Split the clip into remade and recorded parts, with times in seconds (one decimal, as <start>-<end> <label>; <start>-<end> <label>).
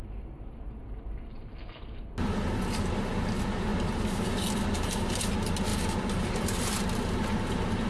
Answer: 0.0-3.7 recorded; 3.7-5.2 remade; 5.2-5.7 recorded; 5.7-6.8 remade; 6.8-7.9 recorded